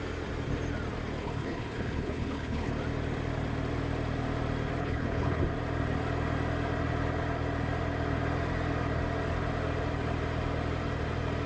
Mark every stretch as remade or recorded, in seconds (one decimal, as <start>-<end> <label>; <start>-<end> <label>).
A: 0.0-1.2 recorded; 1.2-2.7 remade; 2.7-4.8 recorded; 4.8-5.4 remade; 5.4-11.5 recorded